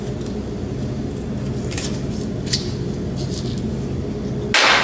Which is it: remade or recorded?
recorded